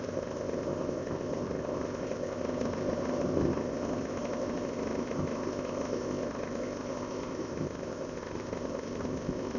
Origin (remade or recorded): remade